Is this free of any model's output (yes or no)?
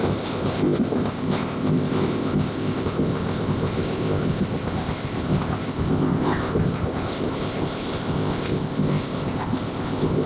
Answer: no